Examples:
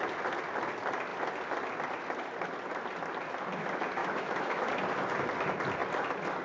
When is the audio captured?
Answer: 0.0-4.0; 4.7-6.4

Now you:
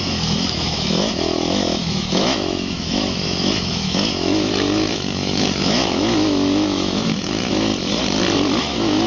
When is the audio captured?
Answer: 7.7-8.6

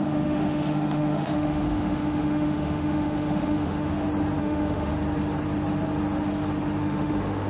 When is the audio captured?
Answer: 3.9-4.4; 4.9-6.8

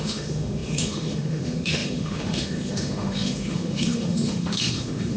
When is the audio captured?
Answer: none

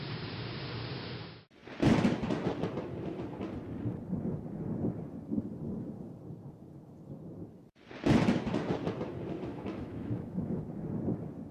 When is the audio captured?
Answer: 0.0-9.5; 10.6-11.5